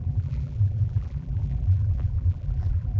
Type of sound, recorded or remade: remade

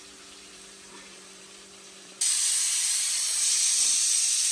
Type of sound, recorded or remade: remade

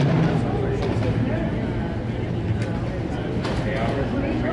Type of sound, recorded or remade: recorded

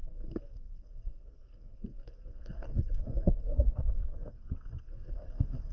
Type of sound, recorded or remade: remade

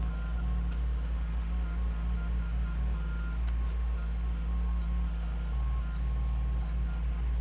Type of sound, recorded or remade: recorded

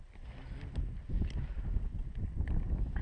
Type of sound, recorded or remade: recorded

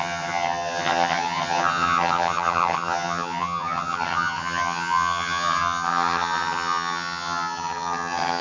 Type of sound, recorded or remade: remade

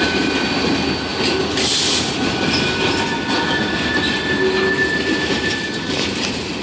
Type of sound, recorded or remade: recorded